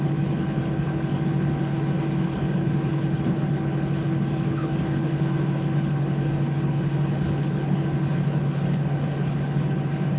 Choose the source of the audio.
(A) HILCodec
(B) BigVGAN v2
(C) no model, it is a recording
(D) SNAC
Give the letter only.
A